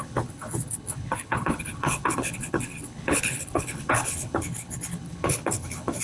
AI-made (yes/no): yes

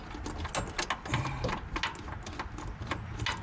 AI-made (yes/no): no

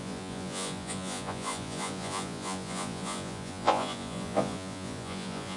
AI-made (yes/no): yes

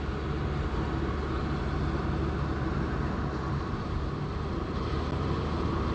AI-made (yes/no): no